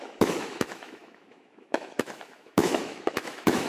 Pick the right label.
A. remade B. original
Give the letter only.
A